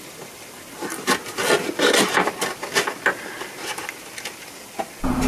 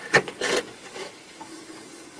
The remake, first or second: second